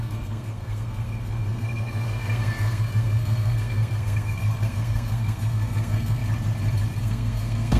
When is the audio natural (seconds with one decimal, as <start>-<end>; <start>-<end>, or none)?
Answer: 6.2-7.0

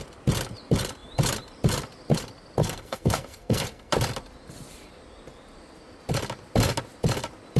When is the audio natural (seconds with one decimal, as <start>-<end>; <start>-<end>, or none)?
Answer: 0.0-2.6; 3.9-7.6